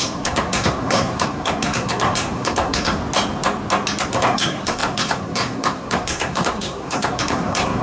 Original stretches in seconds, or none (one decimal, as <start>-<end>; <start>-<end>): 3.0-4.1